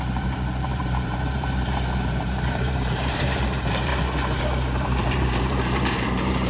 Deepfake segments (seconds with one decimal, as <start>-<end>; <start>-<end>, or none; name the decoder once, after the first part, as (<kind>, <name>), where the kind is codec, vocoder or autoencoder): 0.0-3.9 (vocoder, BigVGAN v2); 4.4-6.5